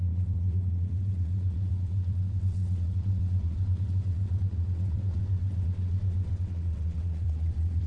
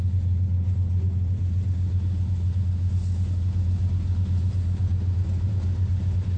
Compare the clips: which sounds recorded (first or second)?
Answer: second